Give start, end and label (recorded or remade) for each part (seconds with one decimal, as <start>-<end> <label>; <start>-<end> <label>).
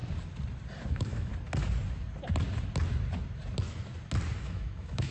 0.0-0.9 recorded; 0.9-1.3 remade; 1.3-4.4 recorded; 4.4-5.1 remade